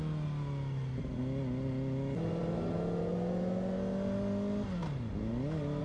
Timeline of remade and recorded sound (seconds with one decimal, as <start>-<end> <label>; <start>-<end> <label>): 0.0-5.8 recorded